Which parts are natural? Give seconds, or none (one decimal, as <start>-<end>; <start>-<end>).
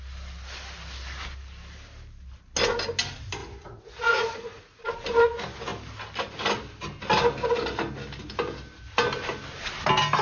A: 0.0-3.4; 4.8-10.2